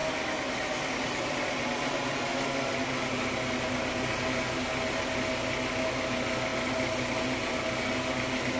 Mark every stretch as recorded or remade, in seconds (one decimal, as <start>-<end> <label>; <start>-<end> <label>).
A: 0.0-8.6 recorded